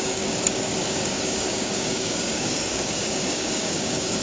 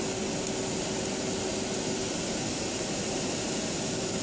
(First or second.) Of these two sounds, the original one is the second